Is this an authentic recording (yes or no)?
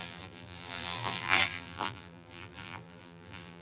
no